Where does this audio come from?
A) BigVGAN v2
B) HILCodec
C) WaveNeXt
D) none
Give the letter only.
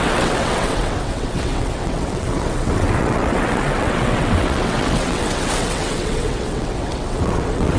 C